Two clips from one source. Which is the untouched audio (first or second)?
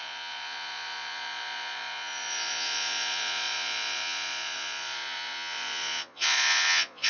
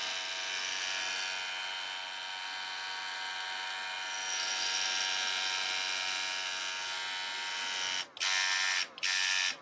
second